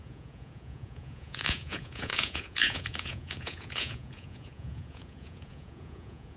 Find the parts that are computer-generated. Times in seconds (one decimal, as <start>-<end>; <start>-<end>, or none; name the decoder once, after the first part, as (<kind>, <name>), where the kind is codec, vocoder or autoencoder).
0.0-6.4 (vocoder, Vocos)

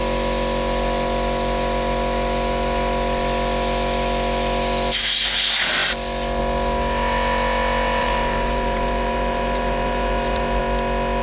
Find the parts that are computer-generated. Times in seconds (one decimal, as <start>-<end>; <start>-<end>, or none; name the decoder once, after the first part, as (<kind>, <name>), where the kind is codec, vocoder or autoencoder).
8.0-10.6 (vocoder, BigVGAN v2)